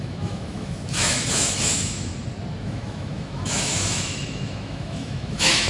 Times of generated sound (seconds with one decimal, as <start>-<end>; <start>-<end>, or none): 0.0-2.1; 2.6-5.7